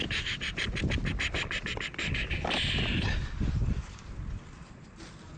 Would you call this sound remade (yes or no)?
no